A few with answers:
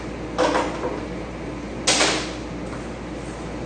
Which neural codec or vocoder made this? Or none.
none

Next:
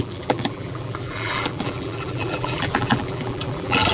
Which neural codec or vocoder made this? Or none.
vocoder, BigVGAN v2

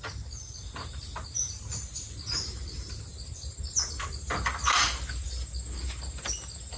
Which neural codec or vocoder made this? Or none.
none